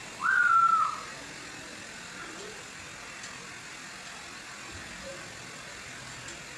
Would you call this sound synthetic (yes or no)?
no